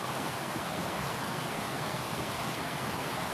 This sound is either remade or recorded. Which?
remade